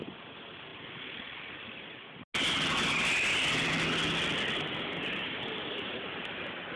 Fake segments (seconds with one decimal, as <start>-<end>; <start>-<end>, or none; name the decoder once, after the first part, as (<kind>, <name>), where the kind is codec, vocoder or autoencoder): none